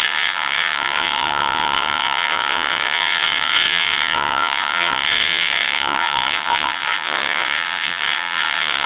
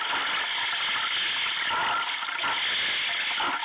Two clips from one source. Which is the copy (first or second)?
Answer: first